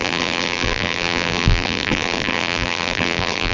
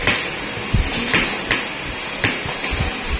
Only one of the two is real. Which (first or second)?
second